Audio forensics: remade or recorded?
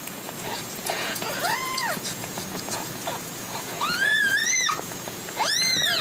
remade